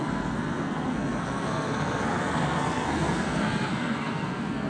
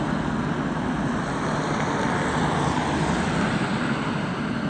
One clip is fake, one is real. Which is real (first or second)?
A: second